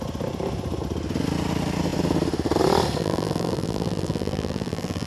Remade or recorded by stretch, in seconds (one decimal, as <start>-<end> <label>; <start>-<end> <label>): 0.0-3.0 recorded; 3.0-5.1 remade